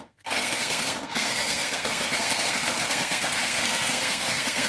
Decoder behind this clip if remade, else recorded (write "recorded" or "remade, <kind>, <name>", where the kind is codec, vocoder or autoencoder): remade, codec, SNAC